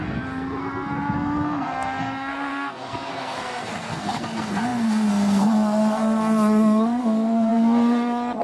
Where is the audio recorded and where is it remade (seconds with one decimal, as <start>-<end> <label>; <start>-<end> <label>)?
0.0-8.4 remade